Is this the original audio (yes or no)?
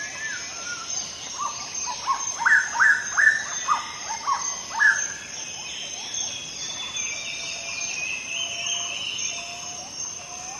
yes